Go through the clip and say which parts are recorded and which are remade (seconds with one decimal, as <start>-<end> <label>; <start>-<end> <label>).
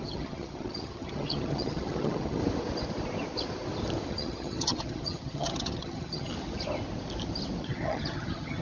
0.0-2.4 remade; 2.4-4.1 recorded; 4.1-6.3 remade; 6.3-7.6 recorded; 7.6-8.6 remade